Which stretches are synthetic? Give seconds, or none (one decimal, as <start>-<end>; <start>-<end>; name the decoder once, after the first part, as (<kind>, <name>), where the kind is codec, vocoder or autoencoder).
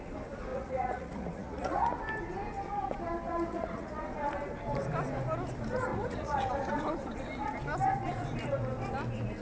0.5-1.9 (vocoder, Vocos); 3.5-4.1; 5.9-6.5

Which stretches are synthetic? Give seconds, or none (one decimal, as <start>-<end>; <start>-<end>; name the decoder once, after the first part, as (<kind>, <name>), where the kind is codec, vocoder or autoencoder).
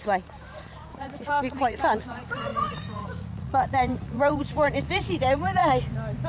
0.0-5.6 (vocoder, Vocos)